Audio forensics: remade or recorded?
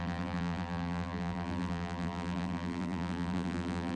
remade